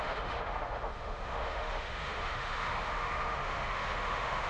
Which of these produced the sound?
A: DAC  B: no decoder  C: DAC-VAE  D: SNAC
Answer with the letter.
C